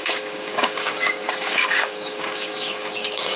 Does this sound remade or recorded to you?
remade